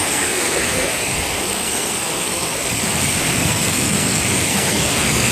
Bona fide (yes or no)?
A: no